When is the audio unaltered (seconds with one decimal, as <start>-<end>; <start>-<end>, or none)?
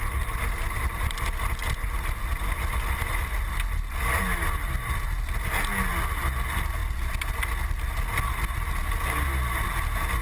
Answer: 0.0-2.2; 3.3-6.8; 7.5-10.2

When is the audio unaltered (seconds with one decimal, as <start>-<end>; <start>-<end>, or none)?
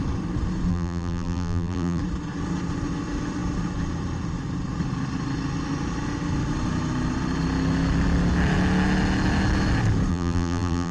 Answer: 0.0-0.7; 2.0-10.1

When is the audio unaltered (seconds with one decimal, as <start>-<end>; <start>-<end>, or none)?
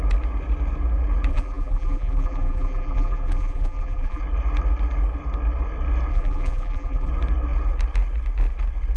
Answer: 0.0-1.3; 4.2-6.1; 7.1-9.0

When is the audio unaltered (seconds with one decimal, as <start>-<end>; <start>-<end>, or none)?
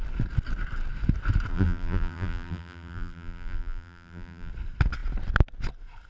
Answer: 0.0-1.5; 4.5-6.1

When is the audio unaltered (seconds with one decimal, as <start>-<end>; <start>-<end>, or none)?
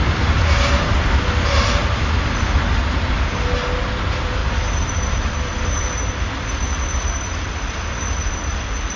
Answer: 0.0-1.8; 3.1-4.4; 8.3-9.0